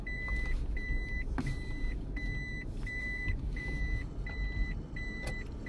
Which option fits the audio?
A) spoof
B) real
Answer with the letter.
A